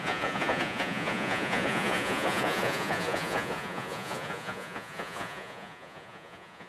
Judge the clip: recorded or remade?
remade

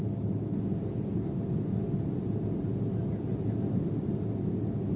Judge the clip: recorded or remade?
recorded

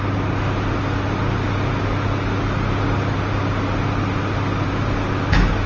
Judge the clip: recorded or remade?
recorded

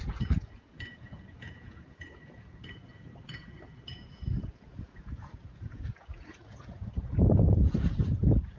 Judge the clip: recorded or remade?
remade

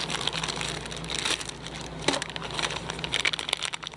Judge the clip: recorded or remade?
recorded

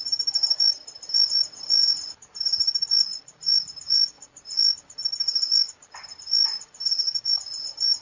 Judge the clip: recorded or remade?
recorded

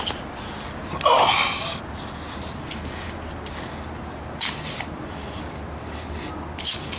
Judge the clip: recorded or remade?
recorded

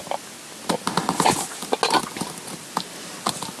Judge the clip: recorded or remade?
recorded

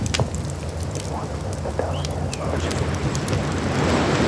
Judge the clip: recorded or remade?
recorded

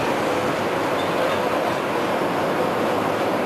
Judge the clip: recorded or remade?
recorded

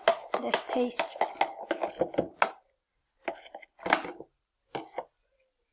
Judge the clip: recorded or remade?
recorded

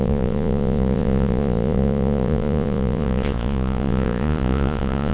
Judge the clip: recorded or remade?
remade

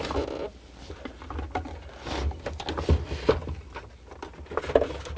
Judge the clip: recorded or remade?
recorded